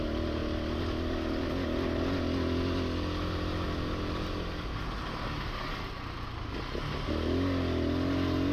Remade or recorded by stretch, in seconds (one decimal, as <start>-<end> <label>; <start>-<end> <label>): 0.0-8.5 recorded